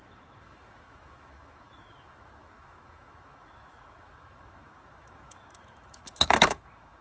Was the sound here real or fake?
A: fake